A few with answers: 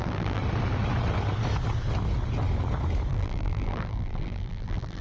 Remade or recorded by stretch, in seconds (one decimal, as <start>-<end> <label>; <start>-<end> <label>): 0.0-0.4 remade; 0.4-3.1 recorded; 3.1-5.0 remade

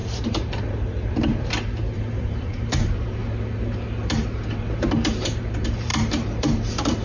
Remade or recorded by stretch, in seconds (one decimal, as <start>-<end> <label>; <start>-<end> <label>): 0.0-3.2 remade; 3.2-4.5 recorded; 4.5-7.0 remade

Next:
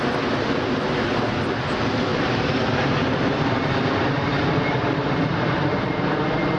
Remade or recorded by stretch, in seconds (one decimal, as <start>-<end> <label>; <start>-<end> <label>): 0.0-2.1 recorded; 2.1-6.1 remade; 6.1-6.6 recorded

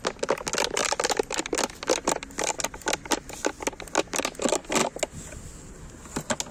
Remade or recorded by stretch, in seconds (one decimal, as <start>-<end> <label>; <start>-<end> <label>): 0.0-6.5 recorded

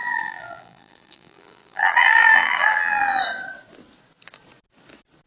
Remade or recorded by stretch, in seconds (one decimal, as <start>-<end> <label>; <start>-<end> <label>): 0.0-3.2 remade; 3.2-5.3 recorded

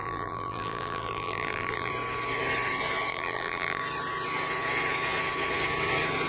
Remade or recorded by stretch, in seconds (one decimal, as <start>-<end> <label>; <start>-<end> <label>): 0.0-1.9 remade; 1.9-3.1 recorded; 3.1-3.8 remade; 3.8-6.3 recorded

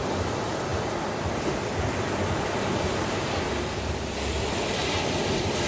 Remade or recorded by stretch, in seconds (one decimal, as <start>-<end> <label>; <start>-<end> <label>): 0.0-0.7 remade; 0.7-4.1 recorded; 4.1-4.8 remade; 4.8-5.3 recorded; 5.3-5.7 remade